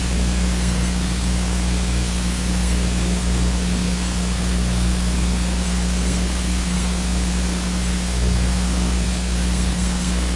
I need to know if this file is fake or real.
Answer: fake